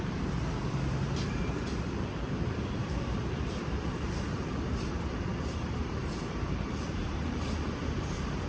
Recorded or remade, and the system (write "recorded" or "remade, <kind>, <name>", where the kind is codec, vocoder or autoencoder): remade, vocoder, BigVGAN v2